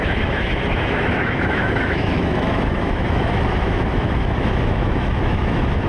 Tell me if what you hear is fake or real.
fake